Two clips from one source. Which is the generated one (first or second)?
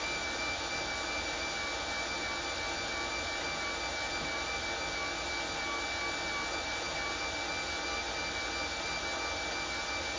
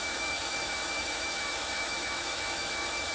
second